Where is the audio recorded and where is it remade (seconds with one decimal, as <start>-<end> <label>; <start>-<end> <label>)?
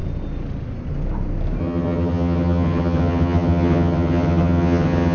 0.0-1.6 recorded; 1.6-5.1 remade